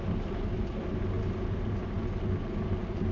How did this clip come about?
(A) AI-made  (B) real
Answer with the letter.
B